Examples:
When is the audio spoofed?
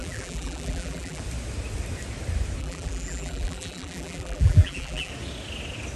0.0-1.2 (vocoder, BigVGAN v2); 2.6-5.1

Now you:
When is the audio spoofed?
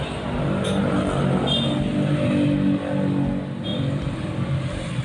3.7-4.5 (vocoder, BigVGAN v2)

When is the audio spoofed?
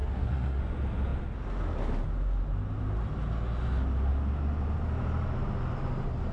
0.0-0.6 (codec, SNAC)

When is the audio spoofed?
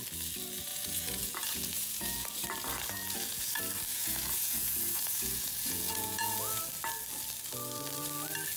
0.7-2.3 (vocoder, Vocos); 3.0-3.5; 3.9-6.6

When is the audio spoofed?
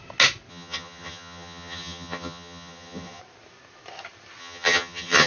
0.5-3.2 (vocoder, HiFi-GAN); 4.4-5.3